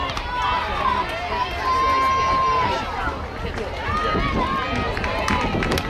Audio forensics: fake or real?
real